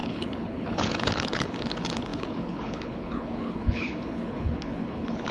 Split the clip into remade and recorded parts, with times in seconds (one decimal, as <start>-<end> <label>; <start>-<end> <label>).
0.0-5.3 remade